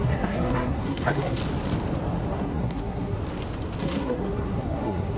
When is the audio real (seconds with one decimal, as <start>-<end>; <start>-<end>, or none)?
1.4-2.3; 3.2-3.8